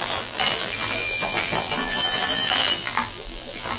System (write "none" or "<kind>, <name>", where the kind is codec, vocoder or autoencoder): vocoder, BigVGAN v2